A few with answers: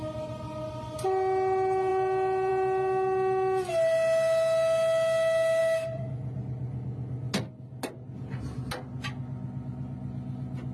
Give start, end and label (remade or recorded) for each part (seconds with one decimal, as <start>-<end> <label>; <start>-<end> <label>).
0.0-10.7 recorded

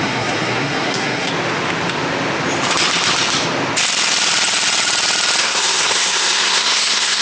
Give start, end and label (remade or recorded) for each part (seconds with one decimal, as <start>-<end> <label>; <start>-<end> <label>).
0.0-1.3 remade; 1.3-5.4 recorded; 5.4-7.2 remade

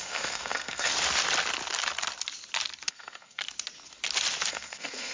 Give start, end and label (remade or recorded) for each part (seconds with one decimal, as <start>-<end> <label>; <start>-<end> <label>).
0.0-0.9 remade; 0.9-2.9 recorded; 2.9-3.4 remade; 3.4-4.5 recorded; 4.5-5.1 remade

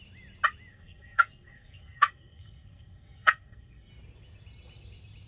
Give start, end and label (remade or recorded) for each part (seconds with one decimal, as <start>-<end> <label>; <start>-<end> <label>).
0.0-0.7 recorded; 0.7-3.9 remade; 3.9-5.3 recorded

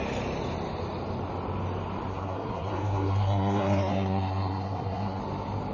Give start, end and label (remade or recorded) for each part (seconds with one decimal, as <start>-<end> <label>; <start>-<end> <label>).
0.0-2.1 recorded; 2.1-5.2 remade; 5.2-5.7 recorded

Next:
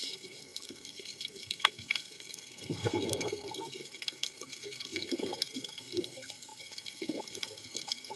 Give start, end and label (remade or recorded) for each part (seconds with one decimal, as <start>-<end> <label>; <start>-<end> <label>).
0.0-8.2 remade

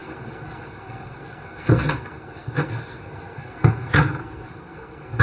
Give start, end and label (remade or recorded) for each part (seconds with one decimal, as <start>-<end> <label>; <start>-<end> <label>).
0.0-5.2 remade

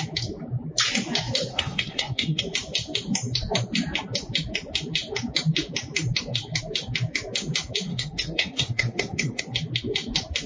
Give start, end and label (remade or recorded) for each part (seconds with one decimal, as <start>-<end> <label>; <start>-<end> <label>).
0.0-1.5 recorded; 1.5-2.4 remade; 2.4-7.9 recorded; 7.9-9.4 remade; 9.4-10.5 recorded